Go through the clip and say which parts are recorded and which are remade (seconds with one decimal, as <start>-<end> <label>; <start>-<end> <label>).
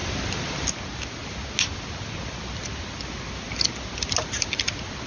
0.0-5.1 recorded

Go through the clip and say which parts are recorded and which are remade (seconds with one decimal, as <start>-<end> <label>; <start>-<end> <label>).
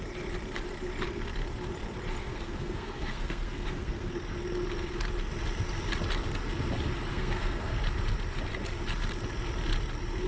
0.0-2.2 recorded; 2.2-4.1 remade; 4.1-7.1 recorded; 7.1-7.8 remade; 7.8-10.3 recorded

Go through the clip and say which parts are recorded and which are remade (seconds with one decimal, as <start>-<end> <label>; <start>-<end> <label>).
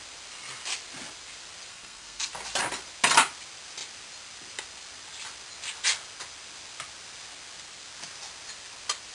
0.0-1.7 recorded; 1.7-2.3 remade; 2.3-9.1 recorded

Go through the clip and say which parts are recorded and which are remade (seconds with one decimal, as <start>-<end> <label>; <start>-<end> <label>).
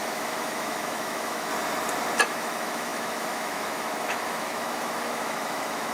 0.0-1.5 remade; 1.5-2.2 recorded; 2.2-5.9 remade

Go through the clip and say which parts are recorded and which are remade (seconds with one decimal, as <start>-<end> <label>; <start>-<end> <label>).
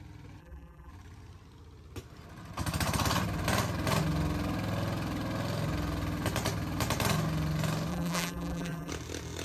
0.0-0.4 recorded; 0.4-0.9 remade; 0.9-7.9 recorded; 7.9-8.9 remade; 8.9-9.4 recorded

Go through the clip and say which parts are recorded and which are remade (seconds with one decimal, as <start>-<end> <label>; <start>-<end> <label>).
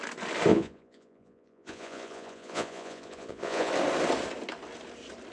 0.0-0.5 recorded; 0.5-3.7 remade; 3.7-5.3 recorded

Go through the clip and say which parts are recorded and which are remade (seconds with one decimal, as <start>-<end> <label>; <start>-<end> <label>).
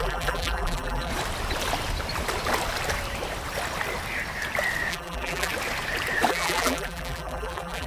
0.0-1.1 remade; 1.1-4.9 recorded; 4.9-5.5 remade; 5.5-6.3 recorded; 6.3-7.9 remade